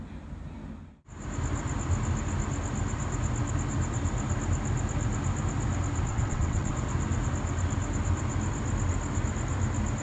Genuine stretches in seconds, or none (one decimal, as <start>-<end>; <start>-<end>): 0.0-6.1; 6.7-10.0